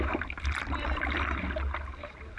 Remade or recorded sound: recorded